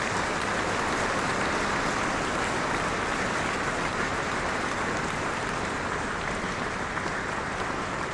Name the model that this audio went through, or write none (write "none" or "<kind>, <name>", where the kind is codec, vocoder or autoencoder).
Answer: none